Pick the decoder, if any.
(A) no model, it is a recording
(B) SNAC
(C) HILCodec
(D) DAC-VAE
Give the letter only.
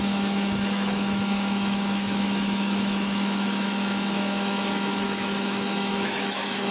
D